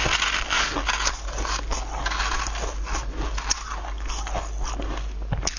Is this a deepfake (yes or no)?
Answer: no